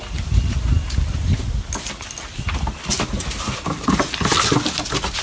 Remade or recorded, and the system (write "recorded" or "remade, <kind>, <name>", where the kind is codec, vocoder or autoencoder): recorded